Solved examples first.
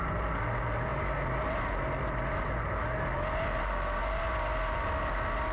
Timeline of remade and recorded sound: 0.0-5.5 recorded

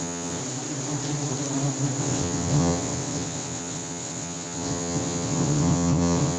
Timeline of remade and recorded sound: 0.0-0.4 remade; 0.4-2.0 recorded; 2.0-6.4 remade

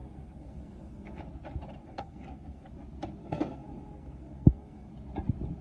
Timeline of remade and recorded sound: 0.0-1.2 remade; 1.2-1.8 recorded; 1.8-2.7 remade; 2.7-3.2 recorded; 3.2-4.9 remade; 4.9-5.6 recorded

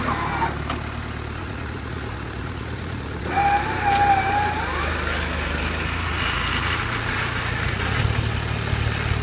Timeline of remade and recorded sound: 0.0-1.4 recorded; 1.4-3.4 remade; 3.4-6.1 recorded; 6.1-8.0 remade; 8.0-9.2 recorded

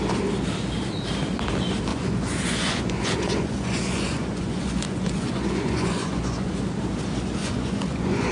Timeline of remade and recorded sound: 0.0-1.9 recorded; 1.9-6.5 remade; 6.5-7.4 recorded; 7.4-8.3 remade